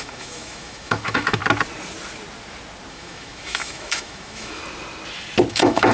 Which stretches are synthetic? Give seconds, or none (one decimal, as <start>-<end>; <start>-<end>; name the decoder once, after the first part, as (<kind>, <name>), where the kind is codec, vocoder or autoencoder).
0.0-1.4 (autoencoder, DAC-VAE); 2.9-4.6; 5.5-5.9